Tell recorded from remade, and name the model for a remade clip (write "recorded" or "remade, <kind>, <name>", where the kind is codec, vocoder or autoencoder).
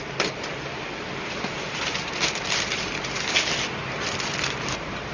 recorded